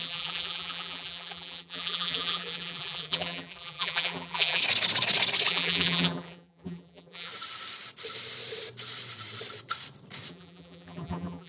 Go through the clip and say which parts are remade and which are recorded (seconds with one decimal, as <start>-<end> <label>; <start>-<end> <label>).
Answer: 0.0-4.6 remade; 4.6-5.5 recorded; 5.5-7.3 remade; 7.3-10.3 recorded; 10.3-11.5 remade